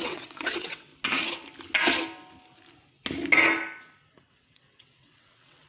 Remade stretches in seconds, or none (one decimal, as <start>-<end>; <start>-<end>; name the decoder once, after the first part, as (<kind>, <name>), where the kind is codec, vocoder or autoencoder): 0.0-0.9 (vocoder, WaveNeXt); 4.3-5.7